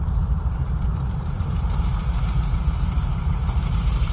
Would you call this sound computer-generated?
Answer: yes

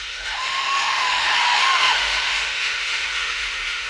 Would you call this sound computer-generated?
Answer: yes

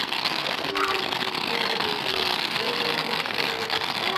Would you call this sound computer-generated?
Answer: yes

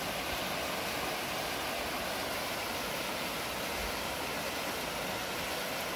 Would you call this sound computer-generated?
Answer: no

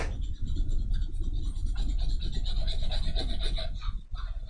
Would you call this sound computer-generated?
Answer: no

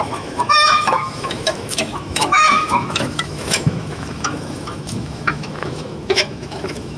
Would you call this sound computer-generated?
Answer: yes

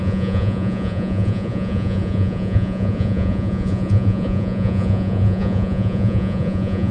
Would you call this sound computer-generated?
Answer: yes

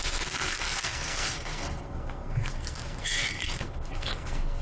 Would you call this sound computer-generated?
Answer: yes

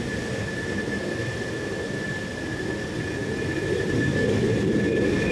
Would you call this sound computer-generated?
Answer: yes